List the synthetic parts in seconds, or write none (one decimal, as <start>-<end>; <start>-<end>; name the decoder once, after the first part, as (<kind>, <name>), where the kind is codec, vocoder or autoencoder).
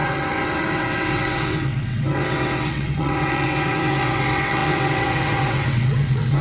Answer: 0.0-6.4 (vocoder, WaveNeXt)